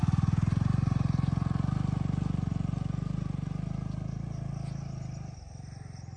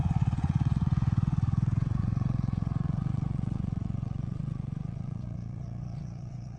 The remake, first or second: second